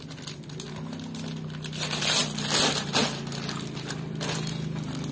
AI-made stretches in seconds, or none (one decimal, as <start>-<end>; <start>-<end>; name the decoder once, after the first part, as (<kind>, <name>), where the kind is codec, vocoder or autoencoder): none